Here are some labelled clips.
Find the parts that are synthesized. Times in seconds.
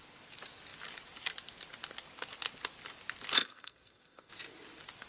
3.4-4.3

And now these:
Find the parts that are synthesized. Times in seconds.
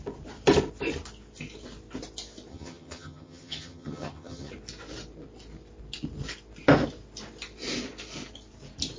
2.5-4.5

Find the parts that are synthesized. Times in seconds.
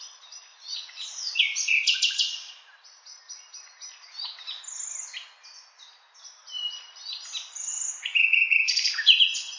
0.5-2.7; 7.7-9.2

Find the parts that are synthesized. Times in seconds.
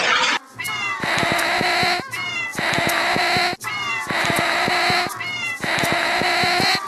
none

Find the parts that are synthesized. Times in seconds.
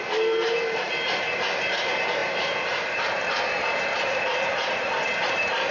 0.0-5.7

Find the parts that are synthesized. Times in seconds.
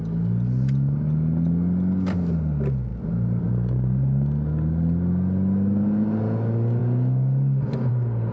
none